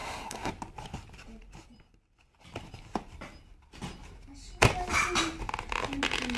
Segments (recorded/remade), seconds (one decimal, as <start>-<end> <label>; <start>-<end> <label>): 0.0-0.5 remade; 0.5-6.4 recorded